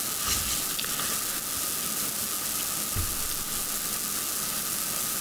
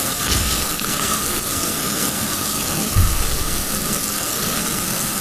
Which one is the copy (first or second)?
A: second